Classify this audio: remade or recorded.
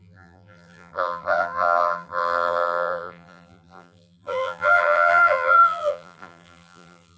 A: remade